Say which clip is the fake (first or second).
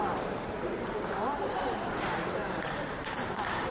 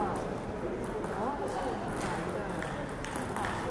first